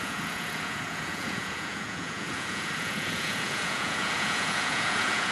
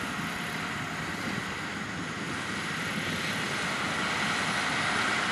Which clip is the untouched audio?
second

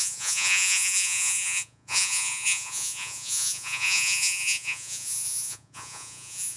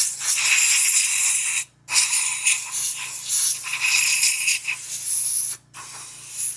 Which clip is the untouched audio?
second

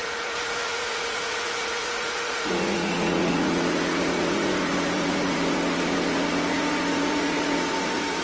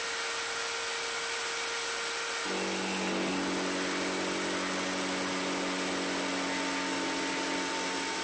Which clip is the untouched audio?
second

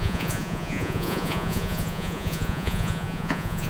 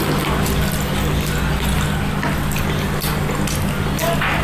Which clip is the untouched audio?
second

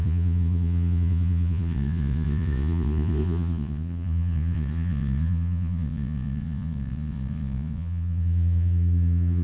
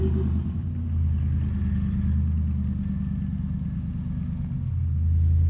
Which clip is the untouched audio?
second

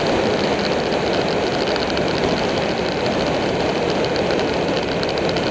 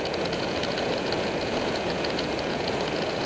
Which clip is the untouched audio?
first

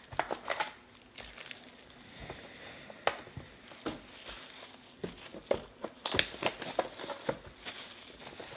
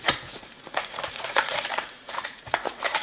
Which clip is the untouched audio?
first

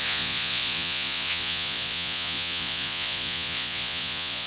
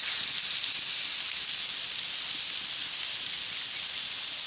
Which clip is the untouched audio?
second